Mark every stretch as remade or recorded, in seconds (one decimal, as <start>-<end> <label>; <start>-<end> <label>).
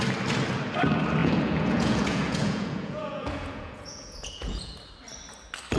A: 0.0-1.2 recorded; 1.2-4.7 remade; 4.7-5.8 recorded